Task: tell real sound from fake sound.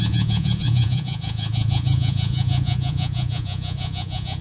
fake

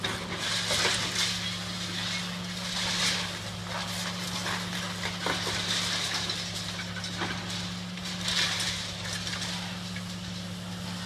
real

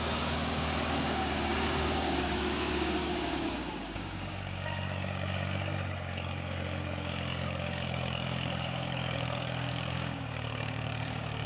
fake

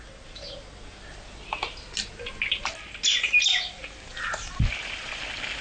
real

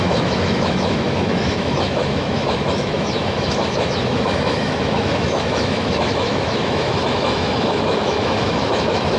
fake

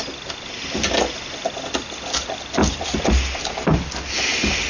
real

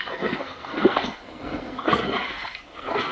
fake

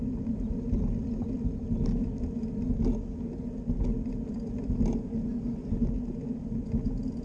real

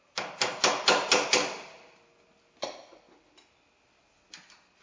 real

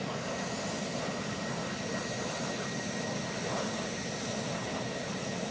real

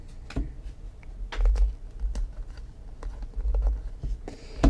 real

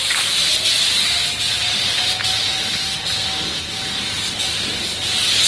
real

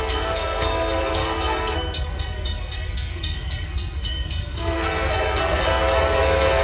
fake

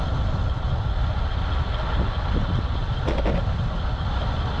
real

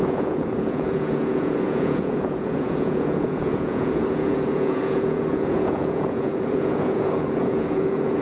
fake